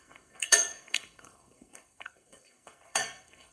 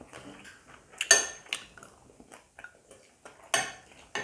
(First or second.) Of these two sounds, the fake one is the first